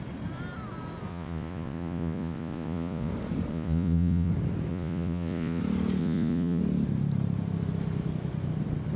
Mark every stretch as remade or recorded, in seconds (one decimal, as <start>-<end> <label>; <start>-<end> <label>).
0.0-1.1 recorded; 1.1-3.1 remade; 3.1-3.5 recorded; 3.5-4.3 remade; 4.3-4.7 recorded; 4.7-5.6 remade; 5.6-6.0 recorded; 6.0-6.6 remade; 6.6-9.0 recorded